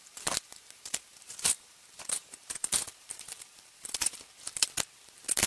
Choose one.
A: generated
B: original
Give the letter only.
A